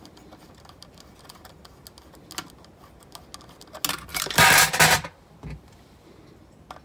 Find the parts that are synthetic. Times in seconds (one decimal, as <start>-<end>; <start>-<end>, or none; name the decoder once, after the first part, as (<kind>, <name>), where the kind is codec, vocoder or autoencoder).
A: 4.1-4.8 (vocoder, BigVGAN v2)